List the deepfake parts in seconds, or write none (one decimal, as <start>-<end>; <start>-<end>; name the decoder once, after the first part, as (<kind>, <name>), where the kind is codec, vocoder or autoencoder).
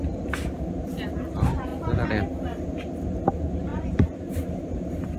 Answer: 0.0-1.7 (vocoder, BigVGAN v2); 3.3-5.2